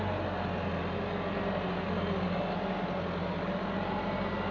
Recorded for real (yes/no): yes